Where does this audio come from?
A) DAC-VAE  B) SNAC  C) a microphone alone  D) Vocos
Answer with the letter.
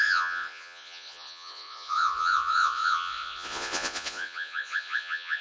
D